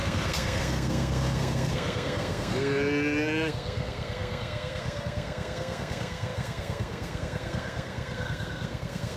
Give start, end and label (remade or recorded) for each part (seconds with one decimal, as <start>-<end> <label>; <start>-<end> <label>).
0.0-9.2 remade